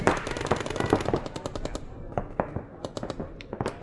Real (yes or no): yes